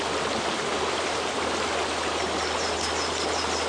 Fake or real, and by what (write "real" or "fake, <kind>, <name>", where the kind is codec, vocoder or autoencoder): real